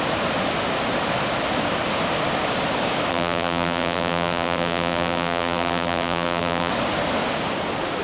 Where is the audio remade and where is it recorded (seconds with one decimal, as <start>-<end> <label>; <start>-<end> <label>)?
0.0-3.1 recorded; 3.1-6.7 remade; 6.7-8.0 recorded